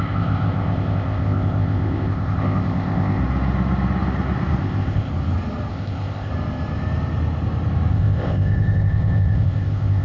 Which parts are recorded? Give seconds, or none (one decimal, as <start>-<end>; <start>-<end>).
3.2-4.6; 5.1-5.7; 6.3-7.9